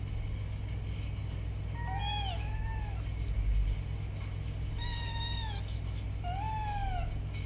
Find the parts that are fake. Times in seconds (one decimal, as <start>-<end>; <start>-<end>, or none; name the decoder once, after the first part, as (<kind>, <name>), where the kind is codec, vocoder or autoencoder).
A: none